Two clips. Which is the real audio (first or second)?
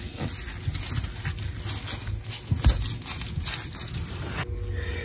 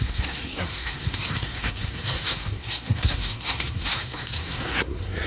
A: first